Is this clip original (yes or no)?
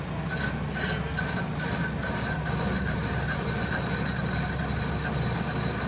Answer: yes